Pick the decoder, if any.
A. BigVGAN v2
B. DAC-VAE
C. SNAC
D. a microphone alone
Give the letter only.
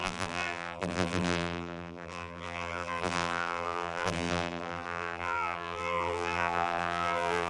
A